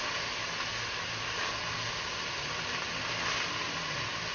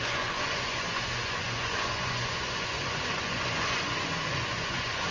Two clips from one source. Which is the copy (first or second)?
second